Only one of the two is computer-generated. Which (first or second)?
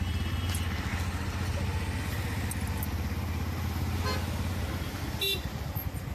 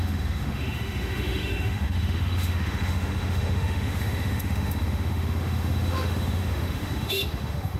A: second